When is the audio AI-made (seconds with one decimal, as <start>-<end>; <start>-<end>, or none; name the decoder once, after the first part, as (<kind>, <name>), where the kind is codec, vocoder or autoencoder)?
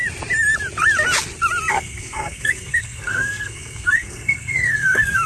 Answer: 1.7-5.3 (codec, SNAC)